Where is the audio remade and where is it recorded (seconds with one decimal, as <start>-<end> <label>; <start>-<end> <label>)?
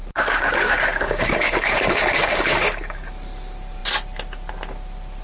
0.0-3.1 remade; 3.1-5.2 recorded